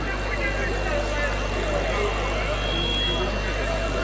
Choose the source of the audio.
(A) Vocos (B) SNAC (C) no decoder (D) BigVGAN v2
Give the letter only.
C